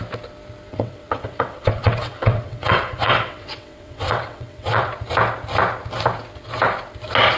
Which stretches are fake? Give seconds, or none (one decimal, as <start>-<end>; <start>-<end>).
0.7-4.9